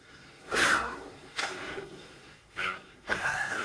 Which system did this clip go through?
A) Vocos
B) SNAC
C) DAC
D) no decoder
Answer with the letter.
B